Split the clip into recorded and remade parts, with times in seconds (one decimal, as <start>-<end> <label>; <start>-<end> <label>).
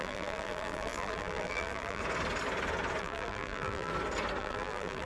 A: 0.0-2.0 remade; 2.0-3.0 recorded; 3.0-3.9 remade; 3.9-4.4 recorded; 4.4-5.0 remade